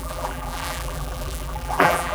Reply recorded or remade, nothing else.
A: remade